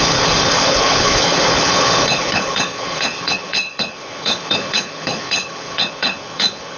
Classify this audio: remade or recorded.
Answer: remade